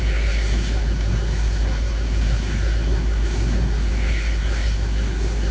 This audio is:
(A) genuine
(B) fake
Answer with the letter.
B